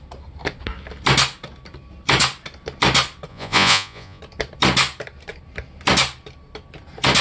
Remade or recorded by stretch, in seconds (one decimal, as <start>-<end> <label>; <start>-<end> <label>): 0.0-3.3 recorded; 3.3-4.2 remade; 4.2-7.2 recorded